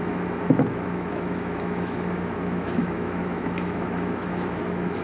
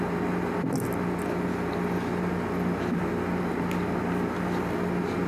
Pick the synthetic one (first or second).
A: first